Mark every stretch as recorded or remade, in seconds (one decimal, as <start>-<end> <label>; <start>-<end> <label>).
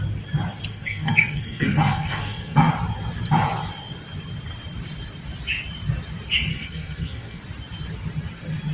0.0-0.7 recorded; 0.7-2.7 remade; 2.7-6.5 recorded; 6.5-7.4 remade; 7.4-8.7 recorded